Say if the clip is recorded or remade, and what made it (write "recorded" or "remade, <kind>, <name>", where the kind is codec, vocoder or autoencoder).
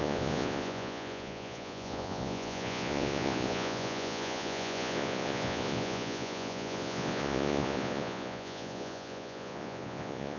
remade, vocoder, Vocos